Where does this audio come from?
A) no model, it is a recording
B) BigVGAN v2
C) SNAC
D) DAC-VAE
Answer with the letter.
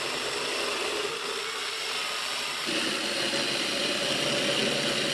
A